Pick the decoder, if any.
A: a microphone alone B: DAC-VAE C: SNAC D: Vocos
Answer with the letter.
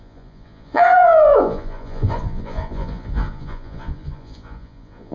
D